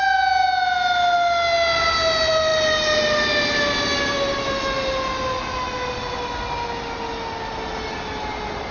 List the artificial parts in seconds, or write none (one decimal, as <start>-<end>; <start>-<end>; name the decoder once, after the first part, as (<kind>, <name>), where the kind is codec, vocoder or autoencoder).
none